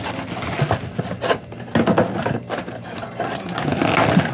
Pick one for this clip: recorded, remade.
recorded